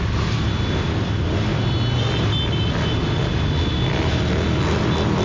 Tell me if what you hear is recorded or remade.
recorded